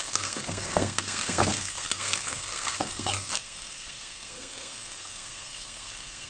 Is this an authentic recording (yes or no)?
no